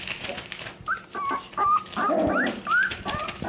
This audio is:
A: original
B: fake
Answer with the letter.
A